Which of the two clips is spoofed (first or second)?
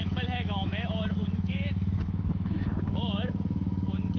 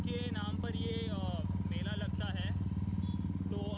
first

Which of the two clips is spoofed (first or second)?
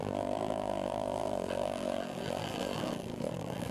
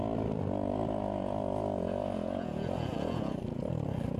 first